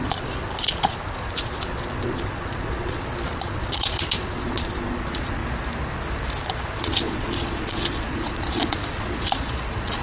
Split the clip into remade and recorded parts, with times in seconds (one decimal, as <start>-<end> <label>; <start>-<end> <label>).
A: 0.0-5.4 remade; 5.4-6.4 recorded; 6.4-10.0 remade